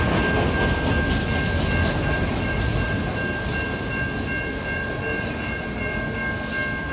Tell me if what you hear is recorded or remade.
recorded